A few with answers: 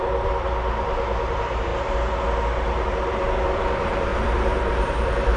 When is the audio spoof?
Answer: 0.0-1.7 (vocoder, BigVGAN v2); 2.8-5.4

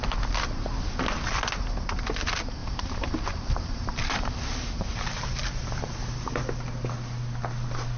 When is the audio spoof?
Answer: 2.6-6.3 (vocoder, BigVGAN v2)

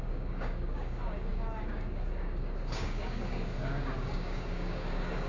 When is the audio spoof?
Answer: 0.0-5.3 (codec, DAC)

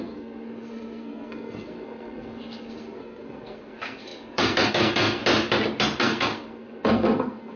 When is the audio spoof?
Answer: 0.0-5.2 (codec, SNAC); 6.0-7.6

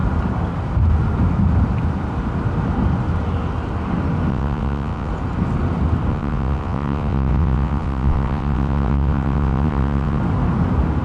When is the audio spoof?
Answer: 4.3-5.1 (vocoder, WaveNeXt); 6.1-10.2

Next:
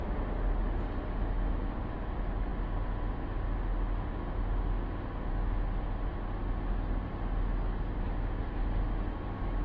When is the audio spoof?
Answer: none

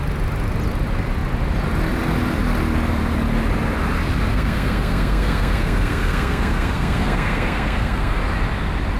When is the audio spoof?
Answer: 4.3-8.2 (codec, SNAC)